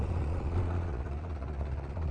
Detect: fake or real fake